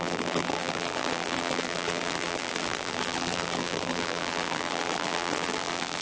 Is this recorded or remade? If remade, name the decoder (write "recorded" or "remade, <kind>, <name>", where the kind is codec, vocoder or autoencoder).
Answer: remade, vocoder, BigVGAN v2